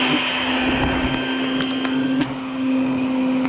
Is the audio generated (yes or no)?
no